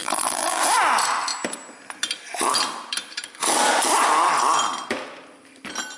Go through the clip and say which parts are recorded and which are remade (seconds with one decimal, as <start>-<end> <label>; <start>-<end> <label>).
0.0-0.6 remade; 0.6-6.0 recorded